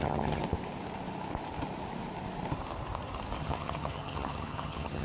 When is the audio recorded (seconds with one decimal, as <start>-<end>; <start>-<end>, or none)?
0.4-3.4